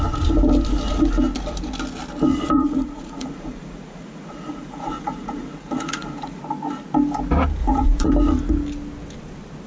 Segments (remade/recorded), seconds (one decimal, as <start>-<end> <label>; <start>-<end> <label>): 0.0-2.3 recorded; 2.3-6.4 remade; 6.4-7.6 recorded; 7.6-8.1 remade; 8.1-9.7 recorded